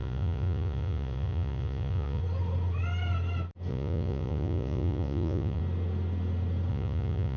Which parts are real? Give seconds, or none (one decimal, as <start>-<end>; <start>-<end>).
2.2-3.7; 5.6-6.7

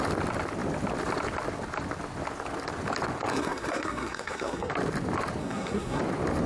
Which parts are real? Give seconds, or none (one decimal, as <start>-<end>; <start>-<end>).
0.0-3.3; 4.7-5.4; 6.0-6.5

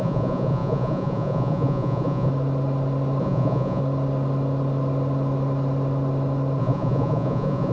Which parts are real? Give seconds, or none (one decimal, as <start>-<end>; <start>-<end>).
2.3-3.2; 3.8-6.6

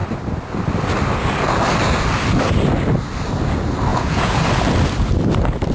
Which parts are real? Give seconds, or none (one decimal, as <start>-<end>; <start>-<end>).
0.0-3.9; 4.4-5.7

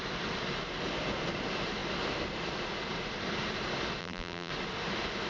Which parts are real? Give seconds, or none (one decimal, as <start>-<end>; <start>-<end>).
0.0-4.0; 4.5-5.3

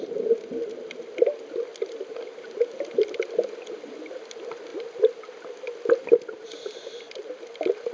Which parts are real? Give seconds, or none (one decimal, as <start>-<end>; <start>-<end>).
0.0-7.9